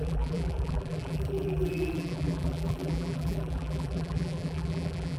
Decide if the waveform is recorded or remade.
remade